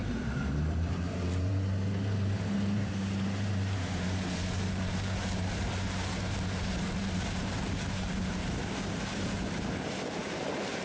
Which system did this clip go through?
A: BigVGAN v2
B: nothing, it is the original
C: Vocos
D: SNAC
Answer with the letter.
A